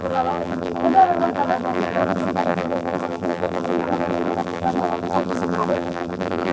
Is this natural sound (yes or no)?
no